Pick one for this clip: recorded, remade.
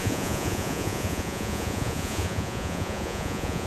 remade